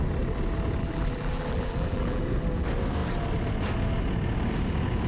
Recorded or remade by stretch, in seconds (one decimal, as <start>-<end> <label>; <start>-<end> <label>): 0.0-0.8 recorded; 0.8-2.2 remade; 2.2-5.1 recorded